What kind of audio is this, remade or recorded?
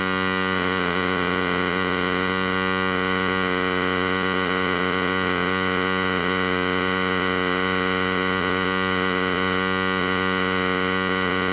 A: recorded